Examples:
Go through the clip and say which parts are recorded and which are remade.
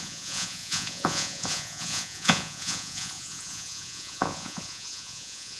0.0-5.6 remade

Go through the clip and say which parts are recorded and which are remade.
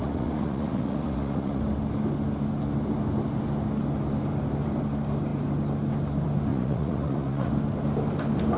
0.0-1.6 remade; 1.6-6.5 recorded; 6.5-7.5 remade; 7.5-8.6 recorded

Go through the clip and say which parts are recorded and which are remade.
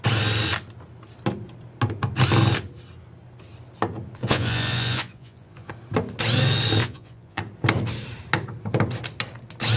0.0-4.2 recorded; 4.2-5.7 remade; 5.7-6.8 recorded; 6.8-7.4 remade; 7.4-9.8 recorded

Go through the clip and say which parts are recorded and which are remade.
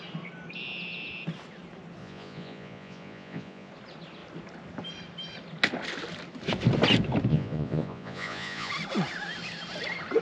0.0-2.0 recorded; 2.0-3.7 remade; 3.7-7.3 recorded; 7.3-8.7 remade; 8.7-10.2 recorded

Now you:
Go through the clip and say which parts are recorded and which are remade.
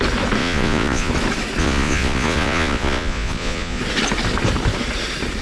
0.0-0.4 recorded; 0.4-1.1 remade; 1.1-1.6 recorded; 1.6-3.8 remade; 3.8-5.4 recorded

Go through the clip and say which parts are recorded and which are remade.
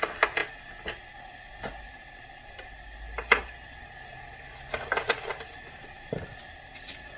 0.0-7.2 recorded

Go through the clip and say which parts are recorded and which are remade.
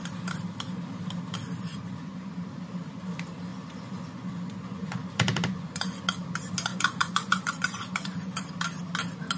0.0-1.7 recorded; 1.7-2.3 remade; 2.3-3.5 recorded; 3.5-6.0 remade; 6.0-6.7 recorded; 6.7-8.5 remade; 8.5-9.4 recorded